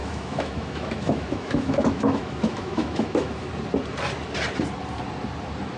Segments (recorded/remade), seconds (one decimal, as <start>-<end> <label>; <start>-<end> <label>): 0.0-3.5 remade; 3.5-5.8 recorded